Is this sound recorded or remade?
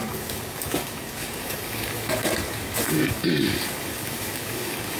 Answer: remade